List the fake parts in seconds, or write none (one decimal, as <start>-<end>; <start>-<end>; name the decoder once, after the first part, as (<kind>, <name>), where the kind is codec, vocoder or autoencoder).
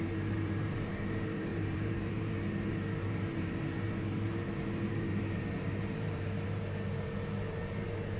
0.0-8.2 (vocoder, BigVGAN v2)